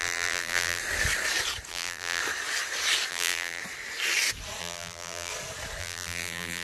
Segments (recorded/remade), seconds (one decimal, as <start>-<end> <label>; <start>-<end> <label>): 0.0-0.8 remade; 0.8-1.7 recorded; 1.7-2.2 remade; 2.2-3.1 recorded; 3.1-3.6 remade; 3.6-4.6 recorded; 4.6-5.3 remade; 5.3-5.8 recorded; 5.8-6.6 remade

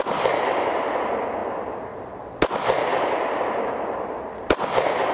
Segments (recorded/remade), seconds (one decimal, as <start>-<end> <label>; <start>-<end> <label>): 0.0-2.9 recorded; 2.9-5.1 remade

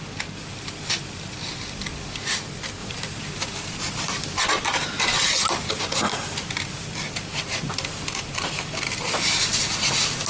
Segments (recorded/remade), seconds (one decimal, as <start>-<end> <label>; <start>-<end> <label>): 0.0-2.8 recorded; 2.8-4.4 remade; 4.4-10.3 recorded

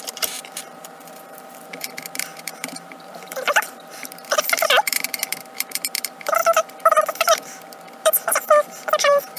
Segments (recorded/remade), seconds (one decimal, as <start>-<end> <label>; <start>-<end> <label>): 0.0-6.4 remade; 6.4-7.1 recorded; 7.1-9.4 remade

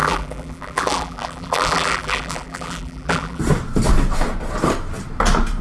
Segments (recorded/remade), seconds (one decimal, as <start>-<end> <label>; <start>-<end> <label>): 0.0-3.4 remade; 3.4-5.6 recorded

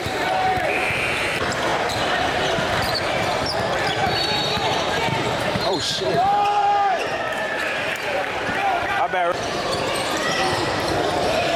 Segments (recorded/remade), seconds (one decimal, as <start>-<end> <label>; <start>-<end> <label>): 0.0-11.6 remade